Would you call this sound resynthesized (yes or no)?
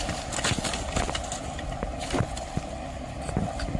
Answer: no